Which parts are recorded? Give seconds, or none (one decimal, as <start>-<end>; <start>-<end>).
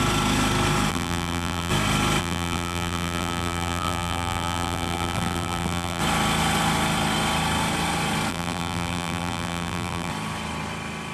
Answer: 0.0-0.9; 1.7-2.2; 6.0-8.3; 10.1-11.1